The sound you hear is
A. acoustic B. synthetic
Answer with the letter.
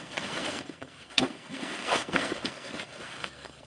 B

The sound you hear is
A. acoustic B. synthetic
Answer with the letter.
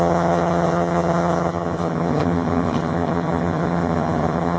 B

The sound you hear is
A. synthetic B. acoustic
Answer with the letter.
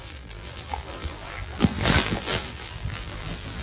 A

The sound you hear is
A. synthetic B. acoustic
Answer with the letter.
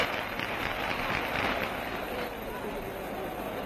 A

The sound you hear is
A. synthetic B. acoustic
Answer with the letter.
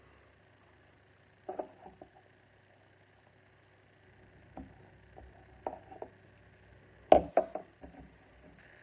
B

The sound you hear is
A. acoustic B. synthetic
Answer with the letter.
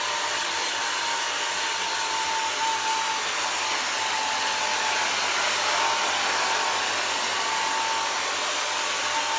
A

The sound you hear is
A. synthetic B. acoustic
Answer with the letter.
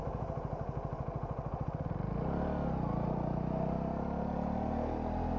B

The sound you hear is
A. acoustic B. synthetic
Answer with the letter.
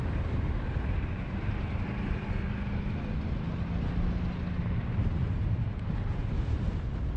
A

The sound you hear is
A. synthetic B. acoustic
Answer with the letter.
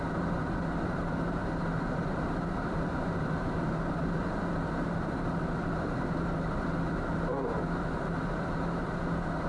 A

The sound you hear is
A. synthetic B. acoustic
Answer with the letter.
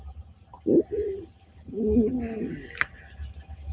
B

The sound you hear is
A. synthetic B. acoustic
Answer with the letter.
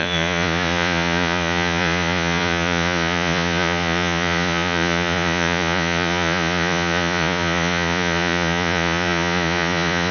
A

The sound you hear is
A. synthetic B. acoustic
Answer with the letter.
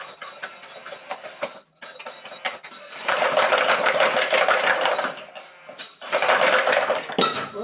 B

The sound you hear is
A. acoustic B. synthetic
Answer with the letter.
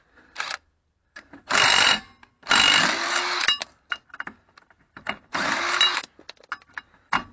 A